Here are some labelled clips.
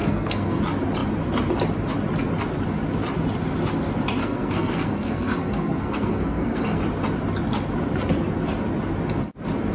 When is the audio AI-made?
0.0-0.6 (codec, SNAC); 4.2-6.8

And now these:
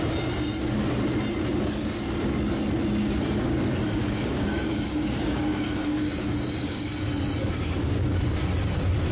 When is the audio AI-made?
4.0-6.9 (codec, DAC)

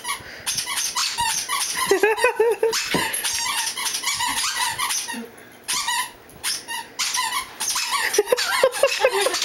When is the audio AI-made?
1.0-1.7 (vocoder, BigVGAN v2); 4.3-7.5

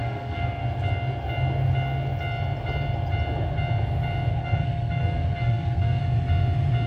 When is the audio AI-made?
0.0-0.6 (codec, SNAC); 4.3-6.0

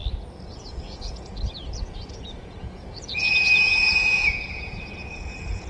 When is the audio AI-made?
0.7-5.7 (vocoder, Vocos)

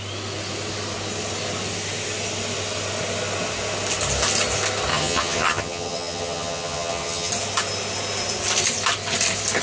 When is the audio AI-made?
4.9-7.3 (vocoder, HiFi-GAN)

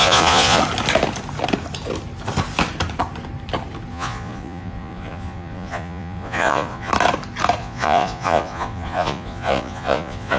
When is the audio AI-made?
0.0-0.6 (vocoder, Vocos); 3.9-6.9; 7.6-10.4